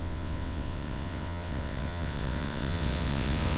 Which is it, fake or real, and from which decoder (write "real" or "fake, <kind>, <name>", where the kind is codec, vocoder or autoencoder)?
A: fake, vocoder, WaveNeXt